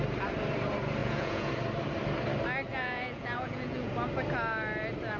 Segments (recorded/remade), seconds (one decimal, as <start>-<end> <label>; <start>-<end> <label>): 0.0-1.0 recorded; 1.0-1.5 remade; 1.5-2.7 recorded; 2.7-3.9 remade; 3.9-5.2 recorded